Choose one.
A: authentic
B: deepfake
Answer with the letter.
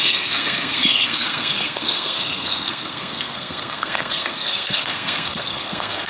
B